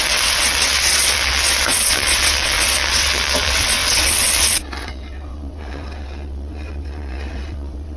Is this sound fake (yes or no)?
yes